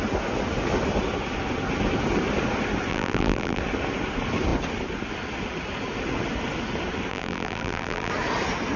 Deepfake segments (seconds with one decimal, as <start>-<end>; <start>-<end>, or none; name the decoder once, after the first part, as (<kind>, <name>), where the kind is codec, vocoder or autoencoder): 2.9-3.6 (vocoder, BigVGAN v2); 7.1-8.1

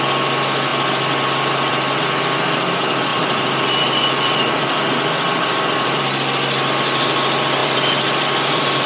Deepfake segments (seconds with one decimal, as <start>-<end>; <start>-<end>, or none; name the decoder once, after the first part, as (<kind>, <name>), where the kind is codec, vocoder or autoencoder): 3.1-6.0 (vocoder, BigVGAN v2); 7.6-8.9

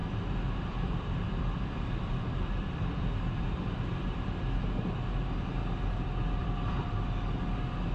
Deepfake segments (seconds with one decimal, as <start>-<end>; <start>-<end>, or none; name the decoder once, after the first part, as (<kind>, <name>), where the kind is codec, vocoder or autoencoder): 0.0-4.6 (vocoder, BigVGAN v2); 6.4-7.3

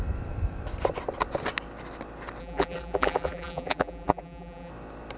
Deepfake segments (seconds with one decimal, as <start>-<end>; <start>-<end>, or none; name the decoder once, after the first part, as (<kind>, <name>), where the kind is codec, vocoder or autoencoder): 2.4-4.7 (vocoder, BigVGAN v2)

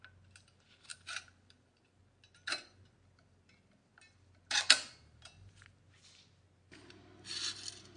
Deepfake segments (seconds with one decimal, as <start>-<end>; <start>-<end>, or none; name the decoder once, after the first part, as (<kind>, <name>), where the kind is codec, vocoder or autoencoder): 0.9-2.0 (vocoder, BigVGAN v2)